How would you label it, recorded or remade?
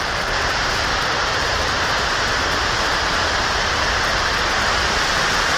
recorded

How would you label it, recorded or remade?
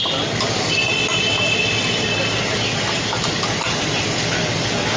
recorded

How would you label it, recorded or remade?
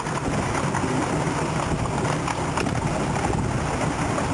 recorded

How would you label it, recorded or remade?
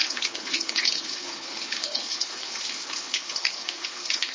remade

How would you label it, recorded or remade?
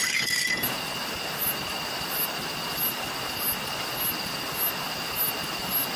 recorded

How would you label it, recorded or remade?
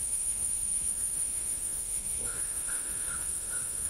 remade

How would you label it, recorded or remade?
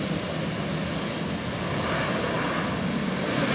recorded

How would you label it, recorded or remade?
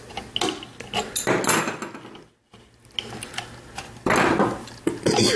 recorded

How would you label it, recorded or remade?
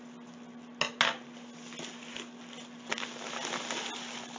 recorded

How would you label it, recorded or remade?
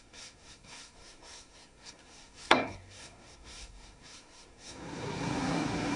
remade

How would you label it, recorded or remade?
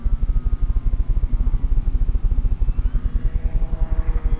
recorded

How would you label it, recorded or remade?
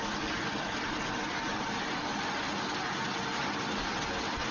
recorded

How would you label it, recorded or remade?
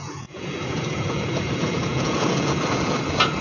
remade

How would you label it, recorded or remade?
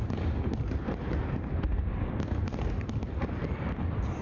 recorded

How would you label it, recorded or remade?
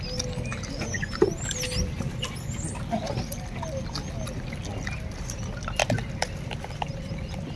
recorded